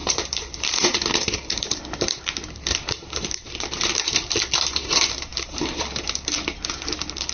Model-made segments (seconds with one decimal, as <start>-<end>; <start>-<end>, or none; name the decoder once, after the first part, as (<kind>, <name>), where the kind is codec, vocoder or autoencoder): 0.0-7.3 (vocoder, BigVGAN v2)